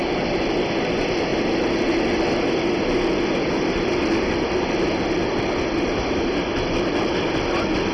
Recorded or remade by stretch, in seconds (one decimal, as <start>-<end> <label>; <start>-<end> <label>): 0.0-7.9 recorded